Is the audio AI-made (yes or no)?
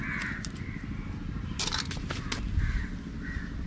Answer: no